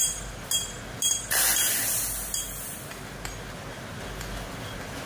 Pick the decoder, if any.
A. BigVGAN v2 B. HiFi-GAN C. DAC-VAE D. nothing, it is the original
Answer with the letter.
D